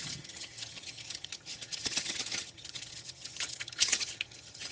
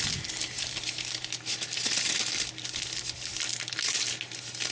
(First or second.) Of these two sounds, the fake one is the first